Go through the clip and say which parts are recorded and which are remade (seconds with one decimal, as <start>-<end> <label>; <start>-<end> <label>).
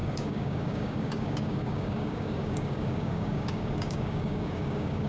0.0-5.1 remade